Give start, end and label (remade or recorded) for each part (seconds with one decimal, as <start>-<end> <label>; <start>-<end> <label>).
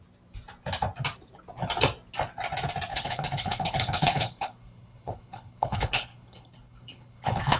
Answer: 0.0-2.9 recorded; 2.9-7.6 remade